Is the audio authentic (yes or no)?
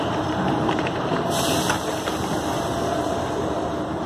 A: no